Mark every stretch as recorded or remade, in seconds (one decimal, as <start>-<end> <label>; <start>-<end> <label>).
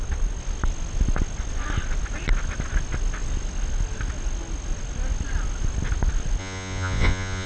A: 0.0-6.4 recorded; 6.4-7.5 remade